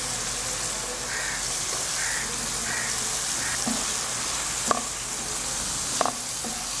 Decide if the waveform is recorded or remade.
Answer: recorded